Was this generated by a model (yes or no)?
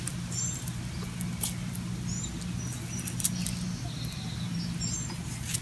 no